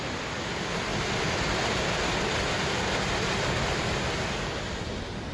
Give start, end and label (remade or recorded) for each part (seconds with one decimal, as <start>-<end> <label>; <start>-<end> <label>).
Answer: 0.0-5.3 recorded